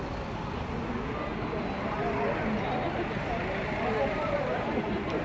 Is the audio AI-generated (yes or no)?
no